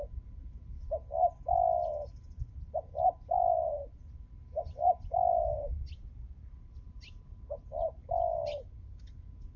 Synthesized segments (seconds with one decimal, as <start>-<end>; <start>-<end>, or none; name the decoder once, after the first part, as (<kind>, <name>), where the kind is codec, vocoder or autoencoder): none

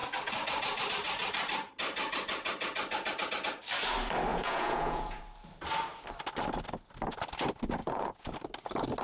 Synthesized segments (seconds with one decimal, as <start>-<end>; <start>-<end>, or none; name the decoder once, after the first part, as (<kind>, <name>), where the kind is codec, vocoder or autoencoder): 4.3-5.2 (vocoder, Vocos); 7.8-8.3

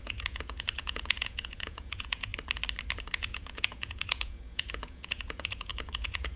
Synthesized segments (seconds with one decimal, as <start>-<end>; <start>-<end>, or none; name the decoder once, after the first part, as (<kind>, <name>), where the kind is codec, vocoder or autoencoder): 0.0-2.3 (vocoder, Vocos); 3.0-6.4

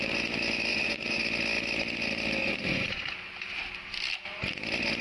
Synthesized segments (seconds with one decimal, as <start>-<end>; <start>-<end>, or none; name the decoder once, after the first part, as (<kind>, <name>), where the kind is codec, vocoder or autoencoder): 0.7-1.2 (vocoder, Vocos); 2.4-3.6

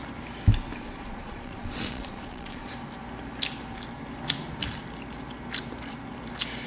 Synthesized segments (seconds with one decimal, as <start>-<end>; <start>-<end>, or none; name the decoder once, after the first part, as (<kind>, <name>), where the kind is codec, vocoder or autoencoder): 0.8-2.7 (vocoder, Vocos)

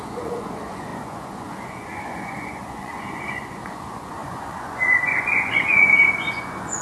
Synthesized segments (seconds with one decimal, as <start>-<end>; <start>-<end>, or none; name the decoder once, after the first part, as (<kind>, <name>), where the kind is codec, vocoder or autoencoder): 0.0-6.8 (vocoder, Vocos)

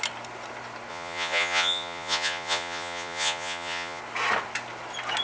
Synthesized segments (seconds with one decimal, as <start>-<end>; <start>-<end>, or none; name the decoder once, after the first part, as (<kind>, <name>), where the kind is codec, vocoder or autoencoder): 0.9-4.0 (vocoder, Vocos)